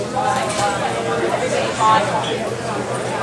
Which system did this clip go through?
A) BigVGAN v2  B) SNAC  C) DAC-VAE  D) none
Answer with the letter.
D